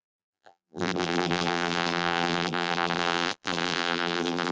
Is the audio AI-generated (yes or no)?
yes